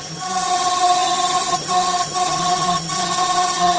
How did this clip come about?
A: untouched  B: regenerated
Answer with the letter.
B